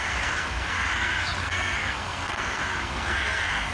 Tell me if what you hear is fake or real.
fake